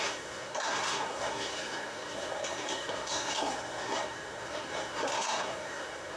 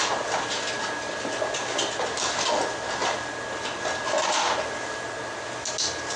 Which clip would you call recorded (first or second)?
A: second